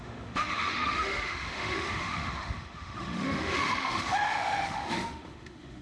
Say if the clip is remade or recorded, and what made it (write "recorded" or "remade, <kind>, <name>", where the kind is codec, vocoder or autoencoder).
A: remade, autoencoder, DAC-VAE